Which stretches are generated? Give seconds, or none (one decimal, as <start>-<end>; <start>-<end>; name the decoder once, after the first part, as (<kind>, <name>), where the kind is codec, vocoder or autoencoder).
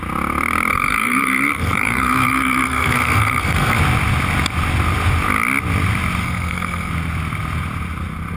0.7-3.8 (codec, SNAC); 6.2-6.9